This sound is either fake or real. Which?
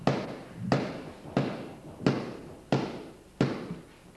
real